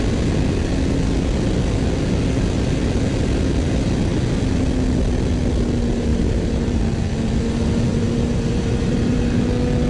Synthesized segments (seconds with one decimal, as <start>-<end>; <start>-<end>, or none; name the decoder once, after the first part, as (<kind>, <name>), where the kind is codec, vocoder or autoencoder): 6.1-6.8 (vocoder, BigVGAN v2); 7.9-9.4